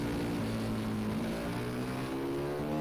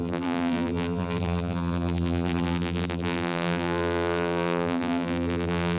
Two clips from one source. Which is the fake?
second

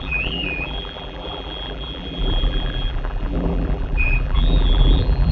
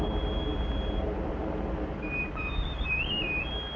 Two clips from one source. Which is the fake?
first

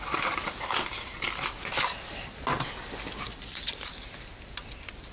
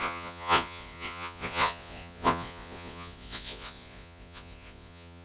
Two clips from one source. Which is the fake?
second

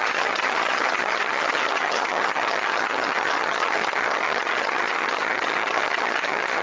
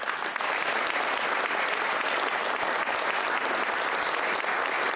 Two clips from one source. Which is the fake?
first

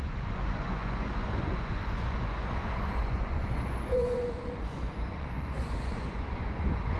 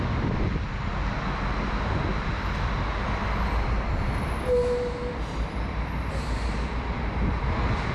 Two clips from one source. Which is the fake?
first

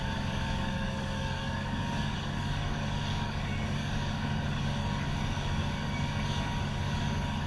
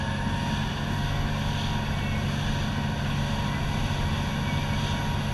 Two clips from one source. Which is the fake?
first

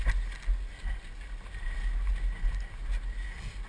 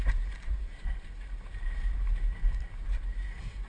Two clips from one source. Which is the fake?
second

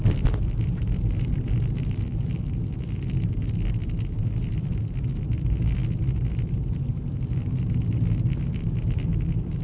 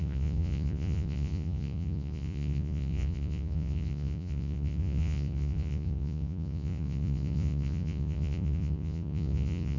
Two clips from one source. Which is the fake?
second